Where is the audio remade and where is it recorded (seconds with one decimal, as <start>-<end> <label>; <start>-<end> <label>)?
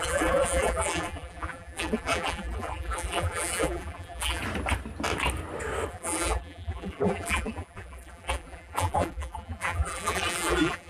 0.0-4.4 remade; 4.4-5.9 recorded; 5.9-10.9 remade